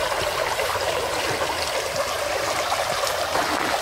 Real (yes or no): yes